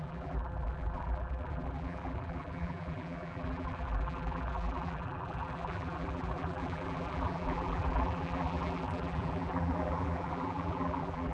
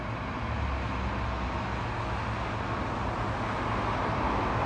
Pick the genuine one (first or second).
second